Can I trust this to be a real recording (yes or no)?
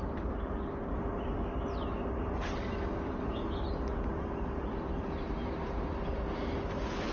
yes